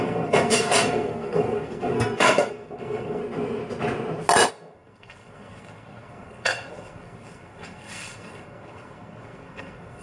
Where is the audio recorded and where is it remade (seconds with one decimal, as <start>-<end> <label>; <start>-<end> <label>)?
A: 0.0-3.2 remade; 3.2-4.5 recorded; 4.5-10.0 remade